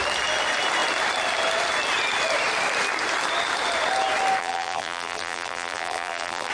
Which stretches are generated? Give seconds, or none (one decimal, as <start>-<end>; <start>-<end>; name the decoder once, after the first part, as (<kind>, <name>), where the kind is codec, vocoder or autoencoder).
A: 4.4-6.5 (vocoder, BigVGAN v2)